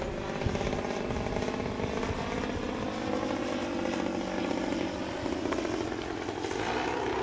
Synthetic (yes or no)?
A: no